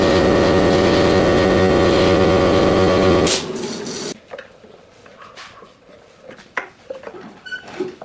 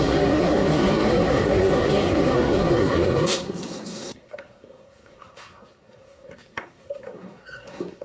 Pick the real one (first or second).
first